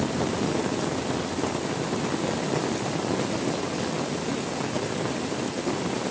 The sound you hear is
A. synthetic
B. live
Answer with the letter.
B